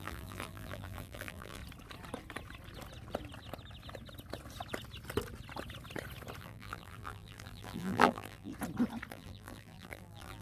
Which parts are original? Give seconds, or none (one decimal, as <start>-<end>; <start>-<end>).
1.6-6.4; 8.5-9.1